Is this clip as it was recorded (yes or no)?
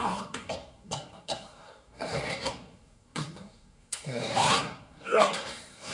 no